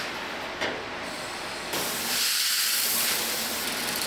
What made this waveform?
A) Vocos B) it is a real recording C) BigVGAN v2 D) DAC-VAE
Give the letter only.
B